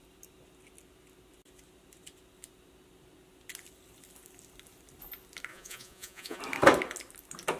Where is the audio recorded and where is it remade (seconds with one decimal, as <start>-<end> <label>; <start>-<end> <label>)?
0.0-5.5 recorded; 5.5-6.4 remade; 6.4-7.6 recorded